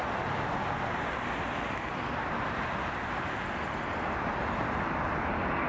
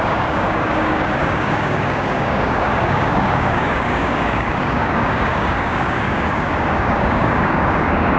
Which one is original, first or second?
first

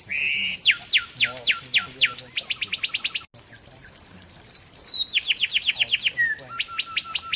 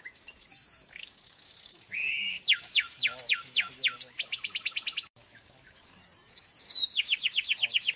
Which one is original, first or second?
first